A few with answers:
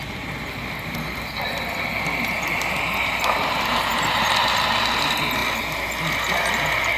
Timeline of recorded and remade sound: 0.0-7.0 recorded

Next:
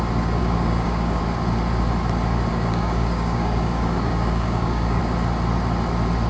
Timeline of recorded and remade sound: 0.0-0.4 recorded; 0.4-1.2 remade; 1.2-2.5 recorded; 2.5-5.0 remade; 5.0-6.3 recorded